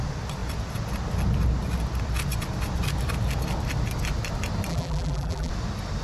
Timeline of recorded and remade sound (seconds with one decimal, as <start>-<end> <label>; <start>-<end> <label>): 0.0-4.7 recorded; 4.7-5.5 remade; 5.5-6.0 recorded